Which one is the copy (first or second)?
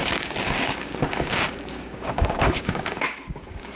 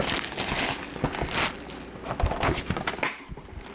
first